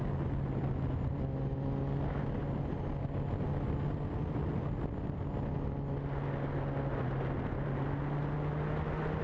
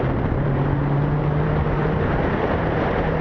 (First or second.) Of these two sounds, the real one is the first